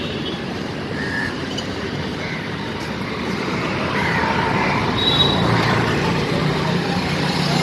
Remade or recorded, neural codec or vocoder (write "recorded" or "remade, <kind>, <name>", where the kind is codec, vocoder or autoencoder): remade, vocoder, BigVGAN v2